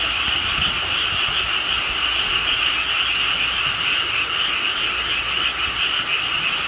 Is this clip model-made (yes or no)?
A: no